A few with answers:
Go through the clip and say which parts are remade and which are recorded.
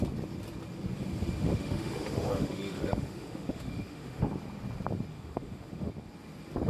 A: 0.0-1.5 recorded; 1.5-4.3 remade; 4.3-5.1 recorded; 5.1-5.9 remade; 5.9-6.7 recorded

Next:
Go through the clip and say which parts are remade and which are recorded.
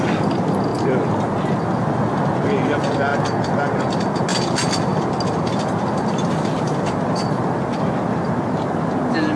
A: 0.0-9.4 recorded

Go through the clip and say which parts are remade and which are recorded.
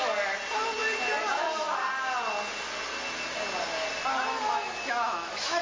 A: 0.0-4.5 recorded; 4.5-5.6 remade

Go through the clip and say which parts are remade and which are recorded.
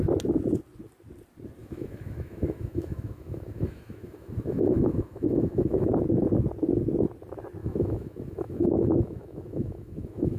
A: 0.0-1.6 recorded; 1.6-5.9 remade; 5.9-7.6 recorded; 7.6-10.4 remade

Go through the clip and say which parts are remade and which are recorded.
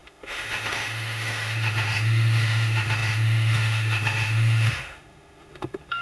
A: 0.0-6.0 remade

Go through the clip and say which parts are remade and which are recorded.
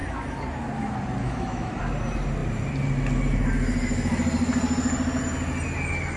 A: 0.0-1.2 recorded; 1.2-1.8 remade; 1.8-6.2 recorded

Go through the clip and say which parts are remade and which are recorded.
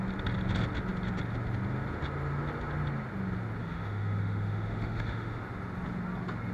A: 0.0-3.6 recorded; 3.6-5.4 remade; 5.4-6.5 recorded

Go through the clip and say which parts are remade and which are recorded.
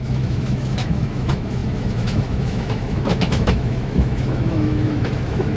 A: 0.0-5.6 remade